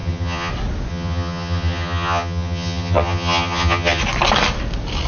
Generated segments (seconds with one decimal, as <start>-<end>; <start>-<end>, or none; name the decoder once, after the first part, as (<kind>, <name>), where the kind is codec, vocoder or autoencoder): 0.0-0.5 (vocoder, HiFi-GAN); 0.9-4.0